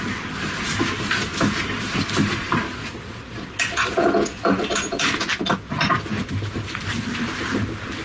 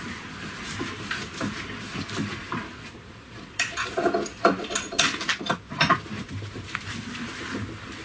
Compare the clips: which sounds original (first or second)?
first